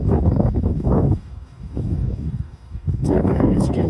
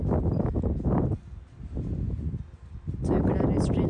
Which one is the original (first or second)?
second